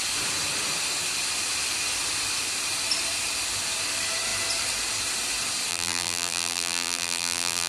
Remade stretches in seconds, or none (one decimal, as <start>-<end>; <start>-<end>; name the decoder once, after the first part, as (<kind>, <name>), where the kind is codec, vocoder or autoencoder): 5.7-7.7 (vocoder, BigVGAN v2)